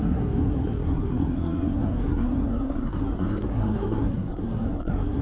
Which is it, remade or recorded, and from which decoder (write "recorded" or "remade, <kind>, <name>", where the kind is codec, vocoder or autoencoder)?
remade, codec, SNAC